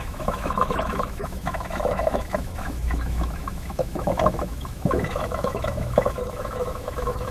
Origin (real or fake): fake